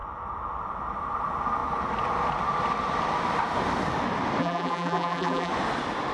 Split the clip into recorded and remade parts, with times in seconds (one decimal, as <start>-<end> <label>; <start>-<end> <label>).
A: 0.0-4.4 recorded; 4.4-5.5 remade; 5.5-6.1 recorded